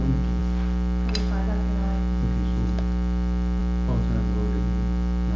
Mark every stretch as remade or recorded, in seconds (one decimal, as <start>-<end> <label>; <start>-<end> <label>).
0.0-5.4 recorded